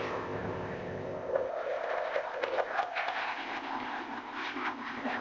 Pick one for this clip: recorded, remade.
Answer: remade